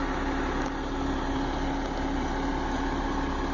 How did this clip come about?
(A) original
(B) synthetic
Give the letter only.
A